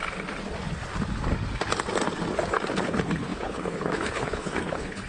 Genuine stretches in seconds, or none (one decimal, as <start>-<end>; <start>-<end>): 0.0-2.8